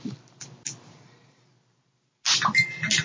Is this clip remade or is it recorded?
recorded